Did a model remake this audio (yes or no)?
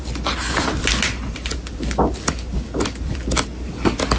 no